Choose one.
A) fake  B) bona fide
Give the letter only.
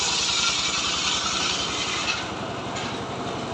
B